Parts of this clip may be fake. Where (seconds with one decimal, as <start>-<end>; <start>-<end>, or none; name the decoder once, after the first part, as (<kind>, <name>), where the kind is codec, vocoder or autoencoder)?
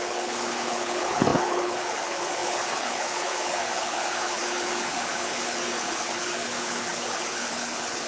0.0-8.1 (codec, HILCodec)